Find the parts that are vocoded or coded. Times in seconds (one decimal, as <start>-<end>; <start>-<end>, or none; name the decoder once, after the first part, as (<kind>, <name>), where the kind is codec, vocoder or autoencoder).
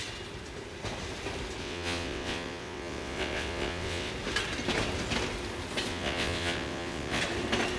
1.6-4.1 (vocoder, WaveNeXt); 5.9-7.2